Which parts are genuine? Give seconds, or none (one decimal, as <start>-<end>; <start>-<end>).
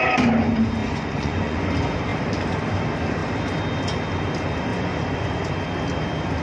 0.0-0.8; 1.6-4.7; 5.5-6.4